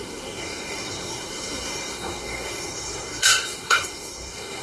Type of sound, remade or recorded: remade